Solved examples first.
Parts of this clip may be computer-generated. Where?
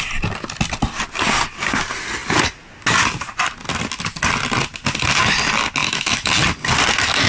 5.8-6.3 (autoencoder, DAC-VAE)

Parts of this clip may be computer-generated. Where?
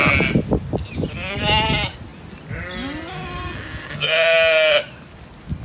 none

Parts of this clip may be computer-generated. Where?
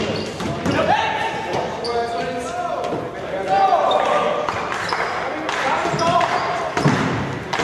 none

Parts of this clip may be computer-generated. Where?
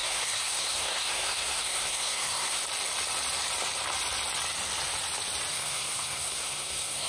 0.0-2.6 (codec, SNAC); 5.5-7.1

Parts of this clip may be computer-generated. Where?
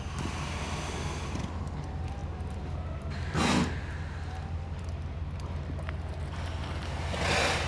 none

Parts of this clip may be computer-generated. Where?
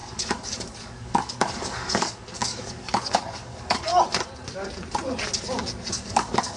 0.0-3.9 (codec, DAC); 5.9-6.6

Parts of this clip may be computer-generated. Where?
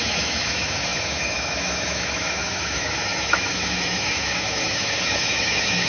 0.0-5.9 (autoencoder, DAC-VAE)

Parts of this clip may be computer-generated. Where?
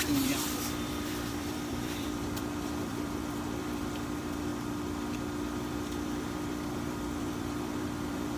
0.0-4.5 (vocoder, BigVGAN v2); 5.3-8.4